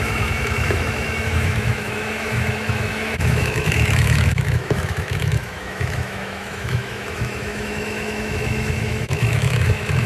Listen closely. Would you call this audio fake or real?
fake